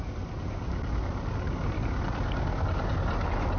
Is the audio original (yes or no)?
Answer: yes